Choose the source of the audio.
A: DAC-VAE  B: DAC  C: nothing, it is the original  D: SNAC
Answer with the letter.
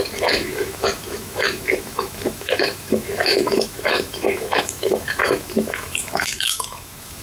A